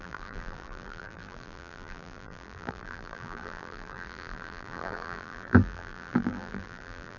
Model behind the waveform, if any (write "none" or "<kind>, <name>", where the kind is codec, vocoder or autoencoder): vocoder, BigVGAN v2